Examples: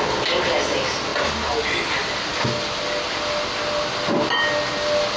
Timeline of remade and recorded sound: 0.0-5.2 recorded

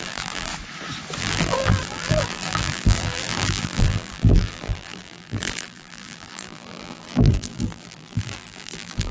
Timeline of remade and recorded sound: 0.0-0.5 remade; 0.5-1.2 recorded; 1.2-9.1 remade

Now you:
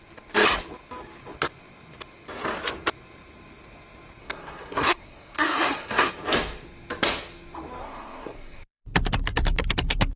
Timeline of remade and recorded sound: 0.0-4.2 recorded; 4.2-6.1 remade; 6.1-7.8 recorded; 7.8-8.8 remade; 8.8-10.2 recorded